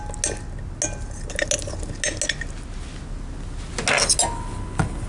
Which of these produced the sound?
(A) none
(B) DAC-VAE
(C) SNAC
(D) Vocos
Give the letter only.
A